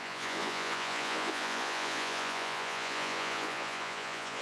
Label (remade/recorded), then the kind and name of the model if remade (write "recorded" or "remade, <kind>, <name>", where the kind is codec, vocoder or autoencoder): remade, vocoder, Vocos